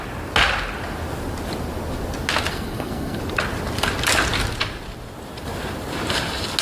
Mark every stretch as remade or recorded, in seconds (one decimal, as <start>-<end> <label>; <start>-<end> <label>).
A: 0.0-2.5 recorded; 2.5-3.2 remade; 3.2-6.6 recorded